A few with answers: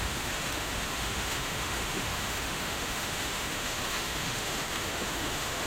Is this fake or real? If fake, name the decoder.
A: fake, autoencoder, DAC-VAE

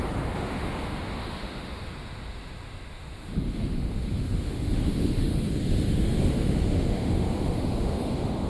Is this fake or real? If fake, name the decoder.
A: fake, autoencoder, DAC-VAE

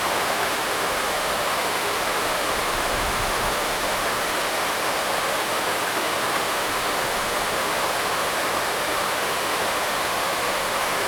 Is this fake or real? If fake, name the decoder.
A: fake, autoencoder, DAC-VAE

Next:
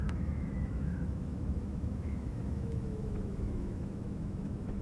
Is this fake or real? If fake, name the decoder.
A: fake, autoencoder, DAC-VAE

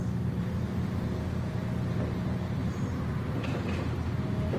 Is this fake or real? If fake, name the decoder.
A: real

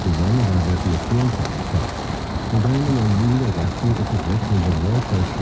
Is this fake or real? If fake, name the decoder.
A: real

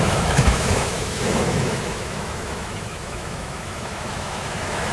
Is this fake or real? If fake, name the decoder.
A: fake, autoencoder, DAC-VAE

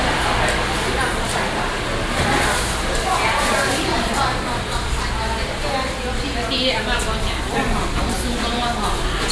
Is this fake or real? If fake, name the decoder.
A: real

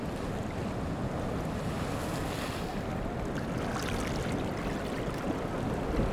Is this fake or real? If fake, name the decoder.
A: real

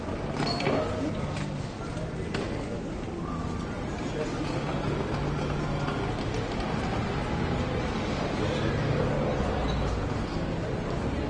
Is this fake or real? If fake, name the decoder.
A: real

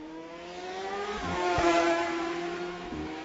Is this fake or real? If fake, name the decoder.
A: fake, autoencoder, DAC-VAE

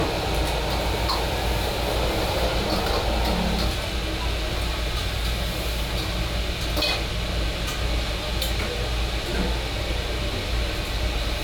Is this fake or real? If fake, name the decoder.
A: real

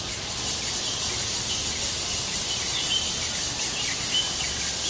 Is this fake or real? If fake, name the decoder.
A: real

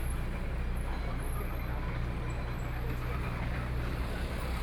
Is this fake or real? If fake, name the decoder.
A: real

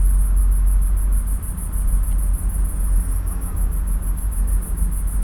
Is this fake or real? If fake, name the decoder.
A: real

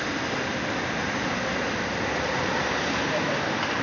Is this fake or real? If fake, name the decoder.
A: real